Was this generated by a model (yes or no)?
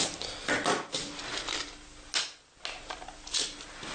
no